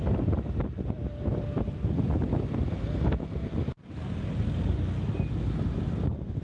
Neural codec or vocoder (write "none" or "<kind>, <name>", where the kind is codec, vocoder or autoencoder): none